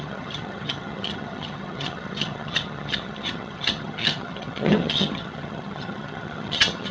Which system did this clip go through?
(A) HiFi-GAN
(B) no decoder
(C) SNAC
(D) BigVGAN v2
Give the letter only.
A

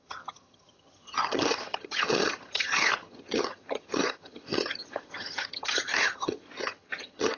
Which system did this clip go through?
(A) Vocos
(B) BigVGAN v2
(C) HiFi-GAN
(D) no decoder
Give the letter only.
C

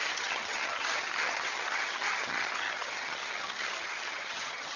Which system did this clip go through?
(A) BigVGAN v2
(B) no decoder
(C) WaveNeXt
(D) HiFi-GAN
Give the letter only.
D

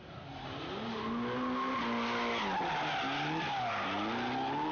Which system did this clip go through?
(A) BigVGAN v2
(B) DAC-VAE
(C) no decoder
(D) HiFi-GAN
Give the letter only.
C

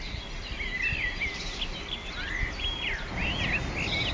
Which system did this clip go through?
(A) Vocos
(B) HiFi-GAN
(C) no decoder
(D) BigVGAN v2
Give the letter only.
C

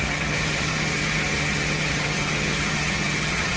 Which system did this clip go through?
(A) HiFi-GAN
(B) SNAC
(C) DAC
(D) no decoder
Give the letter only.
A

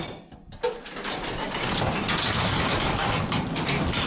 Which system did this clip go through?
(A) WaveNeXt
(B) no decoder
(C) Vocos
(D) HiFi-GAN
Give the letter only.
B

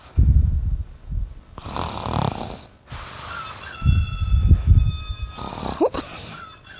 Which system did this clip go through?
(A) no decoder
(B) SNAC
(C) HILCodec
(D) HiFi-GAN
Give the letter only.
A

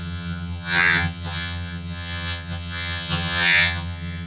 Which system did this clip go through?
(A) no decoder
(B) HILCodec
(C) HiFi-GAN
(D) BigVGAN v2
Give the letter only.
C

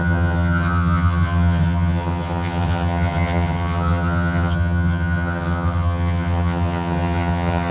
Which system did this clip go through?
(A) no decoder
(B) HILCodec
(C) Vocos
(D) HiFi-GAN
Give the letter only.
D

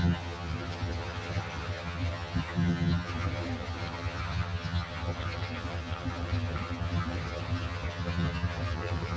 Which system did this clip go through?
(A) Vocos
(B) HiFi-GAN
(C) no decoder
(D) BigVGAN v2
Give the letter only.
B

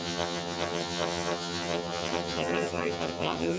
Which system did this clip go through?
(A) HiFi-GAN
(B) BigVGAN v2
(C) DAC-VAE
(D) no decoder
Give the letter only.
A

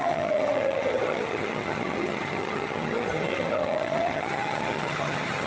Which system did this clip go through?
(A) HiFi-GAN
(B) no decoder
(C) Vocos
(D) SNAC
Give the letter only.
A